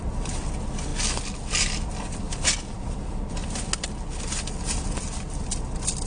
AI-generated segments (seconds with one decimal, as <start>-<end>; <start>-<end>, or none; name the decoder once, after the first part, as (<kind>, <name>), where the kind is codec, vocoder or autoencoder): 0.0-0.9 (vocoder, BigVGAN v2); 1.4-3.4; 4.2-6.1